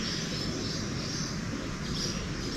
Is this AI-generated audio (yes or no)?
no